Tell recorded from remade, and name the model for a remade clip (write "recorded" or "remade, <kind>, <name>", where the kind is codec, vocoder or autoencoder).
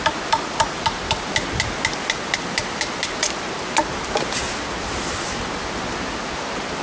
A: recorded